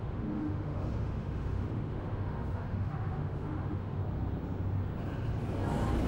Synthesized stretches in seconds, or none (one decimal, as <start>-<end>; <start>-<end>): 0.0-4.0